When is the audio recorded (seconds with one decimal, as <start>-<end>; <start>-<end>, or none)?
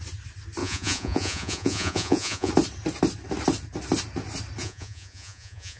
0.0-0.6; 2.5-4.6